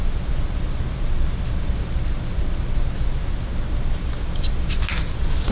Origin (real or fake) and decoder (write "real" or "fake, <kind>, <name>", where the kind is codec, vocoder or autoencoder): real